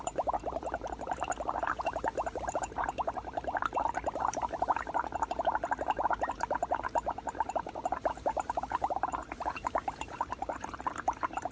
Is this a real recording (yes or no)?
no